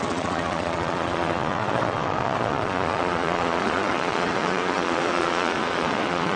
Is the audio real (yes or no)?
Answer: no